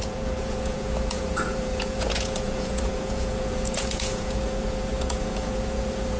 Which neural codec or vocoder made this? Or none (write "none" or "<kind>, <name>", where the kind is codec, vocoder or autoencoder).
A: vocoder, Vocos